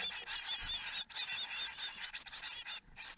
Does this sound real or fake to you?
real